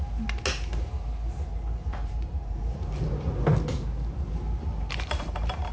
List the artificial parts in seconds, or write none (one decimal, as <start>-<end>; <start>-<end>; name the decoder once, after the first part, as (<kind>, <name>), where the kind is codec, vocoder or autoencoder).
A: 1.9-3.1 (vocoder, BigVGAN v2); 4.6-5.7